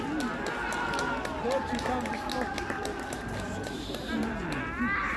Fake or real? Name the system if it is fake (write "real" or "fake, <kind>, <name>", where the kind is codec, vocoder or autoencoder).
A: real